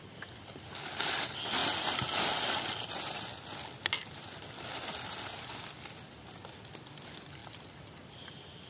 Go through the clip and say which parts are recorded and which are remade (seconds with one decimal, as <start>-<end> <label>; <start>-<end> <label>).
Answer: 0.0-7.4 recorded; 7.4-8.7 remade